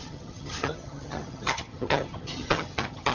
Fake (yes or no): yes